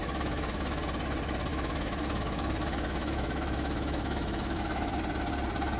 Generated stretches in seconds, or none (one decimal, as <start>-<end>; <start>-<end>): 0.0-0.8; 1.5-5.0